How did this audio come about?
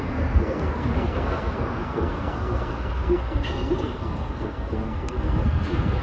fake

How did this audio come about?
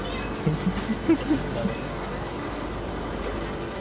real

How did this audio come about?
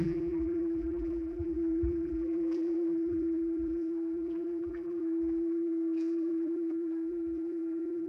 fake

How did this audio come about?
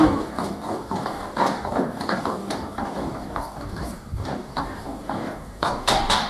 fake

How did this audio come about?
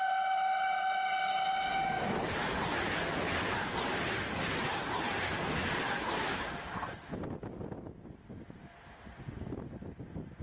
real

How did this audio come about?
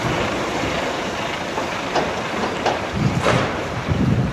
fake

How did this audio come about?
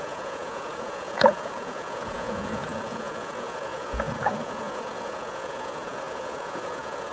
fake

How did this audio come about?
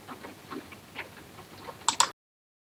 real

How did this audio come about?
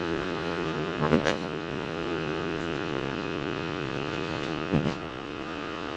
fake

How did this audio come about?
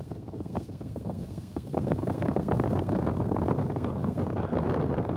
fake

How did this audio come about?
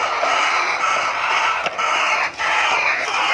real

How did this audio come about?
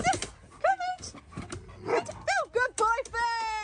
real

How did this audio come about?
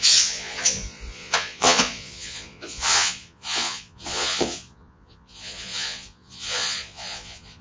fake